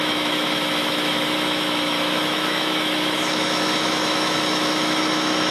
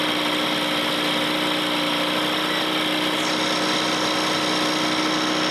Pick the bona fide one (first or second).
second